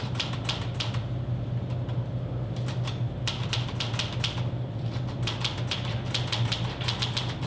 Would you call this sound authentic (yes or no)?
yes